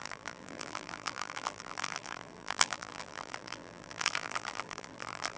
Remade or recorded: remade